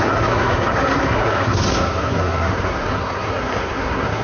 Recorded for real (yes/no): no